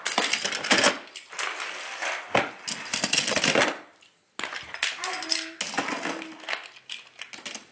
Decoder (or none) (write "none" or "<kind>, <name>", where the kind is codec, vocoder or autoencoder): none